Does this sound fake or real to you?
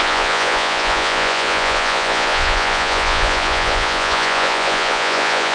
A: fake